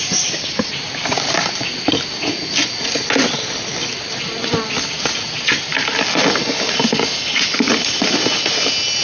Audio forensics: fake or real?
real